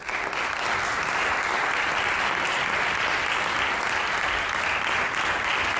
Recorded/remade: recorded